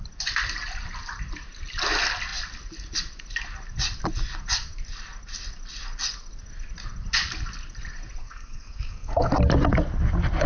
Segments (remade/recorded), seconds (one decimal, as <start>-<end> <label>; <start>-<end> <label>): 0.0-8.2 recorded; 8.2-9.3 remade; 9.3-10.5 recorded